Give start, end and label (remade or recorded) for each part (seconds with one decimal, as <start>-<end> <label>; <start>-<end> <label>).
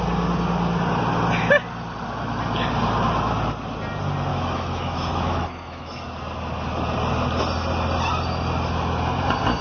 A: 0.0-4.3 recorded; 4.3-6.0 remade; 6.0-9.6 recorded